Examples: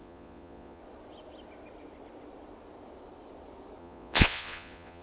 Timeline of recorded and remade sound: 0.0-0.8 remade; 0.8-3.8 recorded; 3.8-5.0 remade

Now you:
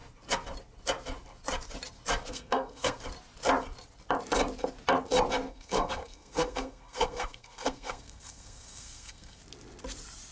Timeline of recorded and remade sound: 0.0-2.3 recorded; 2.3-3.0 remade; 3.0-5.5 recorded; 5.5-9.4 remade; 9.4-10.3 recorded

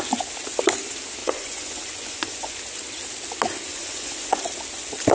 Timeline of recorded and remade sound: 0.0-1.2 recorded; 1.2-2.6 remade; 2.6-3.7 recorded; 3.7-4.4 remade; 4.4-5.1 recorded

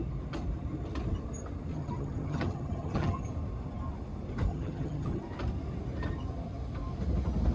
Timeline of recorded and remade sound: 0.0-1.7 recorded; 1.7-3.2 remade; 3.2-4.5 recorded; 4.5-5.2 remade; 5.2-7.5 recorded